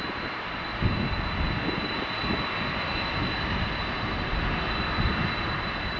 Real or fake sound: real